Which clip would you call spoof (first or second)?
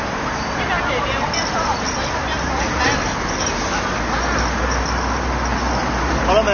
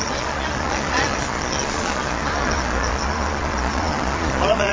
second